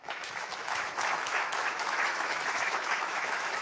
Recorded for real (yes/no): no